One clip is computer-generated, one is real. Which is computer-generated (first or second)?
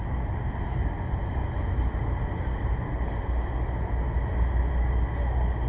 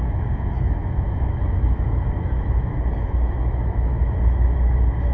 second